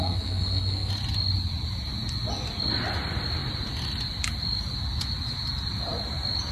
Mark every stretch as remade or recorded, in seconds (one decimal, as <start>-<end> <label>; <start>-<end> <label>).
0.0-0.9 remade; 0.9-6.5 recorded